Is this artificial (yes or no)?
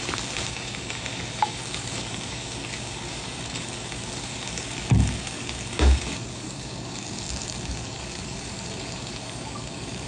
yes